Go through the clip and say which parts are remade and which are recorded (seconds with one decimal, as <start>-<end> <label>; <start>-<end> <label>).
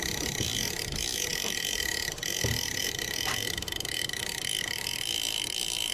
0.0-2.8 recorded; 2.8-4.2 remade; 4.2-5.9 recorded